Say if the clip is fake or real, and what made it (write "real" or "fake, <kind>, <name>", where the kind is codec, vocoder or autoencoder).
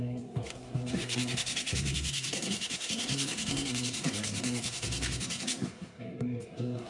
fake, codec, SNAC